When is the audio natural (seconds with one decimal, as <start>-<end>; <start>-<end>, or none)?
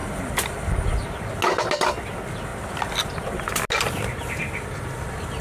0.0-5.4